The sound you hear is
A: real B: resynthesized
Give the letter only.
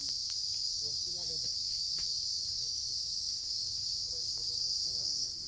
B